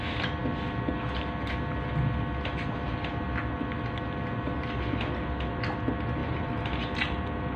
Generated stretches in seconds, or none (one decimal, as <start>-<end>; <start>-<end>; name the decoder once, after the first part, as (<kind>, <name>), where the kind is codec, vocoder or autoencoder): 6.2-6.8 (vocoder, BigVGAN v2)